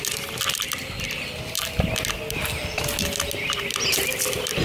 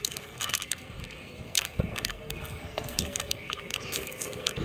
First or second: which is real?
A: first